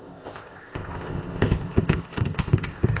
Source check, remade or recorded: remade